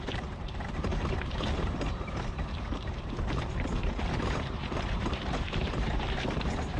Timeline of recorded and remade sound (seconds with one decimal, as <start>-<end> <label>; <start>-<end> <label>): 0.0-6.8 remade